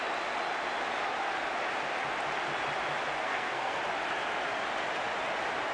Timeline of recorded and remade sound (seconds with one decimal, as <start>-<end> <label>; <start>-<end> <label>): 0.0-3.1 recorded; 3.1-3.8 remade; 3.8-5.7 recorded